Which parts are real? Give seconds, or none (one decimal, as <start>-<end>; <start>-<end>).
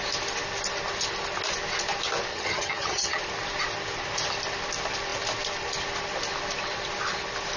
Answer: 0.0-2.3; 3.2-7.6